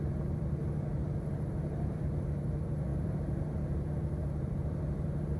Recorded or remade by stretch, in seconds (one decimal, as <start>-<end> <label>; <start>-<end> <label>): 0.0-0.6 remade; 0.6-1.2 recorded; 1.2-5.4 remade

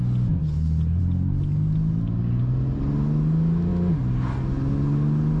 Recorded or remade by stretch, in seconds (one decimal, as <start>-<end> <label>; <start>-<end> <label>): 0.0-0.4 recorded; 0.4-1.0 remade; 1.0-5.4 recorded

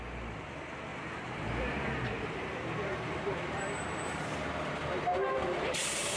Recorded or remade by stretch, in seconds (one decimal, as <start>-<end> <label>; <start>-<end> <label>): 0.0-0.9 recorded; 0.9-4.2 remade; 4.2-5.2 recorded; 5.2-5.8 remade; 5.8-6.2 recorded